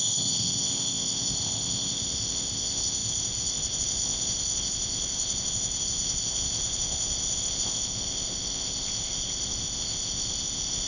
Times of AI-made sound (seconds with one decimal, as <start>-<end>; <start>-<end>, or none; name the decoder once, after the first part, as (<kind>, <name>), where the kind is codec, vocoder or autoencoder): 0.0-10.9 (codec, ZipCodec)